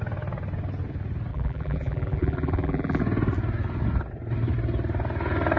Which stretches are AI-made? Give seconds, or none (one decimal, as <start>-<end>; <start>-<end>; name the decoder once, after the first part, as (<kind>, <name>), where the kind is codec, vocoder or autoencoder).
1.3-3.0 (vocoder, BigVGAN v2)